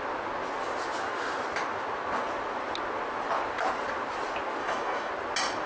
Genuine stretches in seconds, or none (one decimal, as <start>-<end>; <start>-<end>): 0.0-4.6; 5.1-5.7